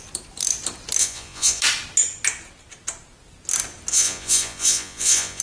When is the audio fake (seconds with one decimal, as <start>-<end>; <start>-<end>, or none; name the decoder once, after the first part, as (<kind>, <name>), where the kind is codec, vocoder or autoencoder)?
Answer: 1.0-1.6 (vocoder, Vocos); 3.9-5.4

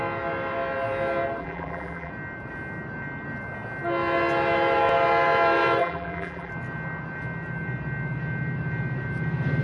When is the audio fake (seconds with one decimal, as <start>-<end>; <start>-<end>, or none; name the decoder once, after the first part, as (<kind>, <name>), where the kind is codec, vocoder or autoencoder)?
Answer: 1.4-2.1 (vocoder, BigVGAN v2); 5.8-6.5

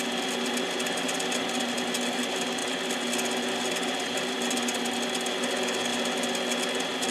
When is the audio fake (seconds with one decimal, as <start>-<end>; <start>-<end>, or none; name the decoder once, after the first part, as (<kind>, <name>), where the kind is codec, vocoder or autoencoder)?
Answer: none

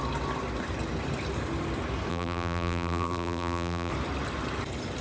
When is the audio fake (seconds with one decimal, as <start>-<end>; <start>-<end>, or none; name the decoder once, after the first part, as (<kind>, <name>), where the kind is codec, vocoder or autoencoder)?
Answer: 2.1-3.9 (vocoder, BigVGAN v2)